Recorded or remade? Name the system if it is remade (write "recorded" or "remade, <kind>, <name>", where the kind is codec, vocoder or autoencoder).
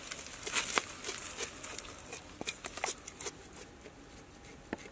recorded